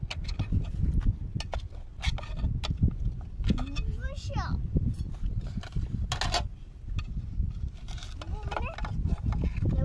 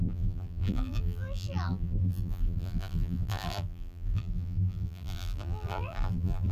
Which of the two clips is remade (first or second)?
second